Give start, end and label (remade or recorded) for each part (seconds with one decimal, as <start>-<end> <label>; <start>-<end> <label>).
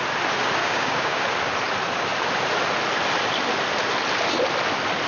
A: 0.0-0.6 recorded; 0.6-1.2 remade; 1.2-5.1 recorded